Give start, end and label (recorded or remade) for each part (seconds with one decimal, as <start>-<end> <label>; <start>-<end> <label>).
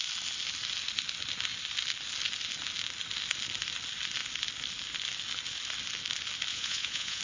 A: 0.0-6.5 recorded; 6.5-7.2 remade